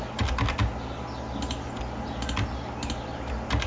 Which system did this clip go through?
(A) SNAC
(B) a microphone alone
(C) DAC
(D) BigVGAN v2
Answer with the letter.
B